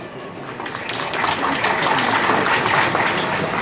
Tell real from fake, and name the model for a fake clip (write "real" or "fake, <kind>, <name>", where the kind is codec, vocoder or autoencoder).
real